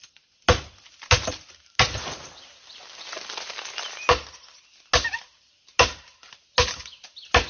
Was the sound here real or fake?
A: real